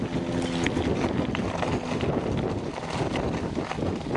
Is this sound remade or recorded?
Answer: recorded